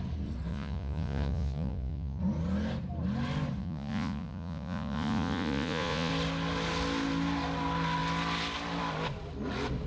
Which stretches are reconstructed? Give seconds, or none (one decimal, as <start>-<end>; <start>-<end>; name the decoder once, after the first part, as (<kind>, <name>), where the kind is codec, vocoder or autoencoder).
0.5-2.2 (vocoder, Vocos); 3.6-6.1